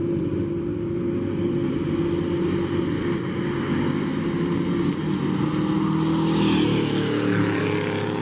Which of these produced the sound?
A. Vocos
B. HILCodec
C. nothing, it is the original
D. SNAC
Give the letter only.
C